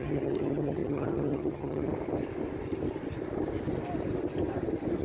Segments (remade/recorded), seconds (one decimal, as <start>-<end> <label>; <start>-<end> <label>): 0.0-1.9 remade; 1.9-5.0 recorded